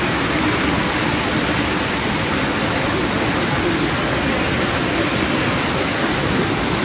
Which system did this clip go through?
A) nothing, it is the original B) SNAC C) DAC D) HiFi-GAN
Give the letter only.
A